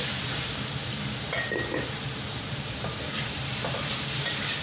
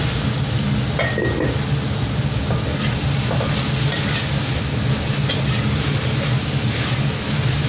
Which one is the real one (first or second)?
second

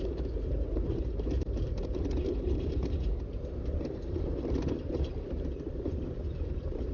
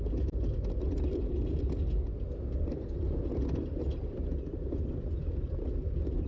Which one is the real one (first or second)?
second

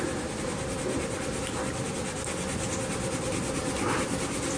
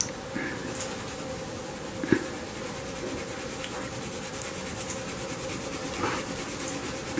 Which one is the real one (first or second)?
second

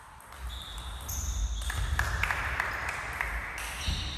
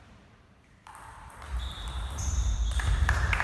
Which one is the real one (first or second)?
first